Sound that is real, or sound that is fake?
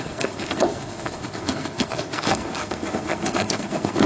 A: fake